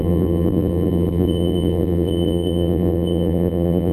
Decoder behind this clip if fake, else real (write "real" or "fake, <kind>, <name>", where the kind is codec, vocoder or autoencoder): fake, vocoder, BigVGAN v2